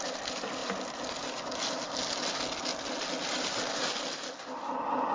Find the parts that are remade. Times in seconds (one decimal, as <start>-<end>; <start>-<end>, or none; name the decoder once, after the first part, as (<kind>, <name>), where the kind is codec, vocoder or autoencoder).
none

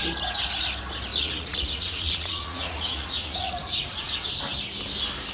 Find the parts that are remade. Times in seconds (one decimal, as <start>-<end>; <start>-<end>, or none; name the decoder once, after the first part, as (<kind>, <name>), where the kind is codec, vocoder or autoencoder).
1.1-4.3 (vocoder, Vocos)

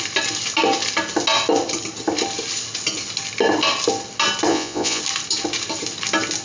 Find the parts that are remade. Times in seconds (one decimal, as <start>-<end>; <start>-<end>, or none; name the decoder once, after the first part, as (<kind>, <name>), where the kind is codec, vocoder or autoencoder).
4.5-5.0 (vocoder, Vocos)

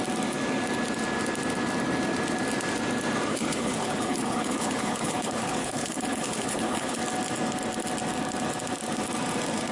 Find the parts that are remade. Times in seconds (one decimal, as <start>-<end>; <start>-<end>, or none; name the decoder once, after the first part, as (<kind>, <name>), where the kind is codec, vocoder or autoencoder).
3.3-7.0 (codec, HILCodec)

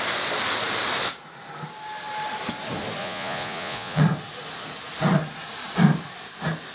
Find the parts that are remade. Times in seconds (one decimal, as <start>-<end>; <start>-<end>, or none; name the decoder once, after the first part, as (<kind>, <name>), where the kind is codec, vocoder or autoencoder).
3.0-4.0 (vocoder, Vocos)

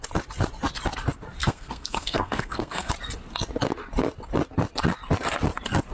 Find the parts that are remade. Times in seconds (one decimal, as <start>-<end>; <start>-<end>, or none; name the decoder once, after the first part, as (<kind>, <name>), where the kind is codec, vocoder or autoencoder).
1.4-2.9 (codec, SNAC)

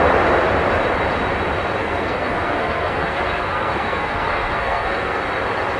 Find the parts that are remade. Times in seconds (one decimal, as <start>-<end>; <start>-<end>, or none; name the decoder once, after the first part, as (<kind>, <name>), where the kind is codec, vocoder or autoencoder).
1.8-5.2 (codec, SNAC)

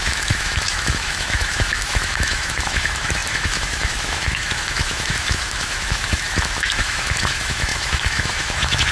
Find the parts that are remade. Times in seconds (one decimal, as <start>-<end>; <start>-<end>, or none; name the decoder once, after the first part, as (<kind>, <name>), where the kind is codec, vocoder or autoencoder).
0.0-8.9 (autoencoder, DAC-VAE)